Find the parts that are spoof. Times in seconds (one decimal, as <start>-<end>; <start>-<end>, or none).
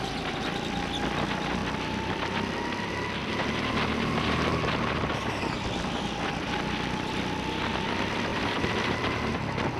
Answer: 1.6-2.2; 8.3-9.2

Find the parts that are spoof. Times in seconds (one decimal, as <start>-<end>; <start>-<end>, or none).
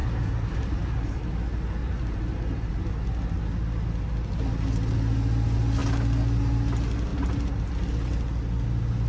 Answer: 0.0-1.2; 1.8-2.9; 7.1-7.6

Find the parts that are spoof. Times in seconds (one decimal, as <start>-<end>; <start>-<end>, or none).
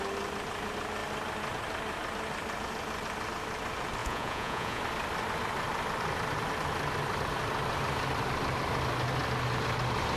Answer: 4.0-4.8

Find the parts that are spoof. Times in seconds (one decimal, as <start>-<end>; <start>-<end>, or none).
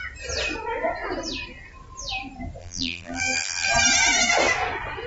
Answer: 2.6-3.7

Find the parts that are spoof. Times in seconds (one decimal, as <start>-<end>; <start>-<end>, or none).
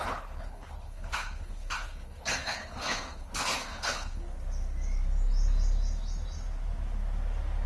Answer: 0.0-4.2